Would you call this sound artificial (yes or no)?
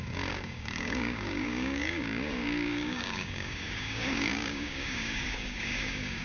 yes